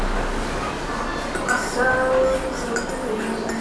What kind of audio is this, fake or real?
real